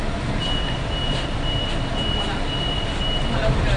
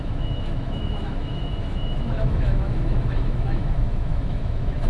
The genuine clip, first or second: first